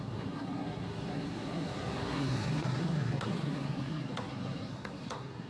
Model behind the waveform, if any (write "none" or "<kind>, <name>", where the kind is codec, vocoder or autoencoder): codec, SNAC